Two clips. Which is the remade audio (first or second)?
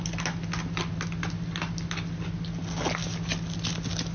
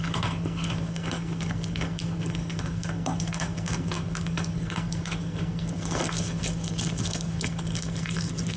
second